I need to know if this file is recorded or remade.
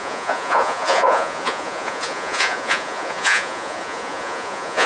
remade